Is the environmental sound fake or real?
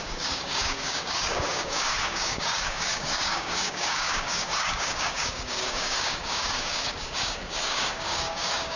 fake